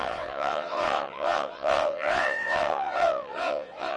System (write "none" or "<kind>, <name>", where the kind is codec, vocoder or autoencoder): vocoder, WaveNeXt